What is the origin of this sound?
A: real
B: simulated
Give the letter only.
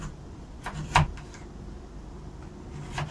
A